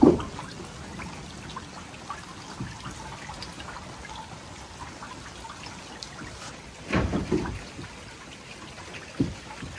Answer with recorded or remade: recorded